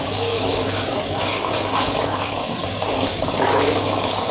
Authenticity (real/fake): fake